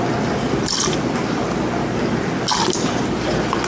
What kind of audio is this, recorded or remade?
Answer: recorded